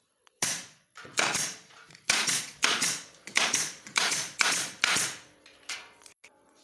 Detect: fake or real fake